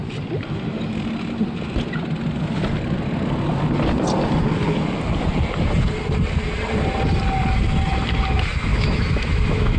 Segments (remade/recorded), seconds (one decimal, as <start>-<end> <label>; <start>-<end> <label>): 0.0-8.7 recorded; 8.7-9.8 remade